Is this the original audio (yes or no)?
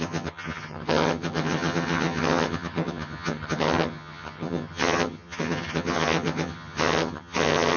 no